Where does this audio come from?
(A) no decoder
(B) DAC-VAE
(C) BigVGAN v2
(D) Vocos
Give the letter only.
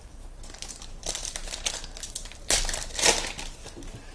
A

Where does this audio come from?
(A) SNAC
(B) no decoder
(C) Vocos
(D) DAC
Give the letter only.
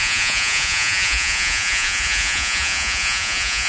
C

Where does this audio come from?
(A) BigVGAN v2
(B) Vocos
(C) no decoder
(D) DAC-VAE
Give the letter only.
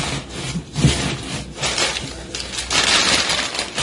C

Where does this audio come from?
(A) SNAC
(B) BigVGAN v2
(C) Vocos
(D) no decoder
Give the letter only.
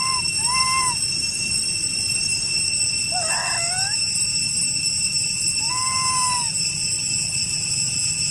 D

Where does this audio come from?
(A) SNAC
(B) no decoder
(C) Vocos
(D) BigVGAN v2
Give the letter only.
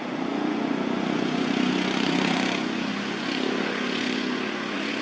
C